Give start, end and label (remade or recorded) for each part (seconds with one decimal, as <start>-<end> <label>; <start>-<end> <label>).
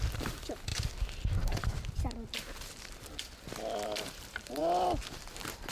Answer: 0.0-0.7 remade; 0.7-4.1 recorded; 4.1-4.6 remade; 4.6-5.3 recorded; 5.3-5.7 remade